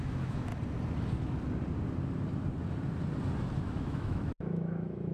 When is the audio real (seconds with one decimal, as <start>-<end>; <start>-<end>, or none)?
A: 0.5-3.6